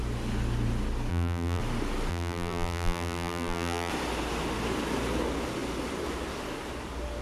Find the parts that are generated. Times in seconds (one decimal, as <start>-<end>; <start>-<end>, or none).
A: 1.1-1.6; 2.1-3.9